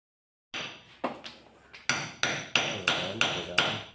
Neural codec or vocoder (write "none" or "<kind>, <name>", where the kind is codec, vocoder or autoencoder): none